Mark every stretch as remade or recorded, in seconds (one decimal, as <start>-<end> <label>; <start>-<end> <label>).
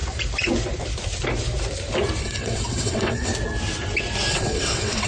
0.0-2.2 recorded; 2.2-3.3 remade; 3.3-4.3 recorded; 4.3-5.1 remade